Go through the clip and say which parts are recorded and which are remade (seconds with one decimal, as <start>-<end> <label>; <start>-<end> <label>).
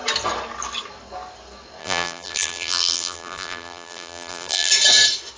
0.0-1.8 recorded; 1.8-4.7 remade; 4.7-5.4 recorded